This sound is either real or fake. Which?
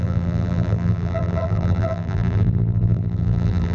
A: fake